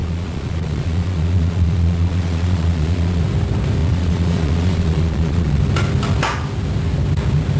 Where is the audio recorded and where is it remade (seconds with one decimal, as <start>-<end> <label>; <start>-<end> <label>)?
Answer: 0.0-3.2 remade; 3.2-3.8 recorded; 3.8-5.6 remade; 5.6-7.6 recorded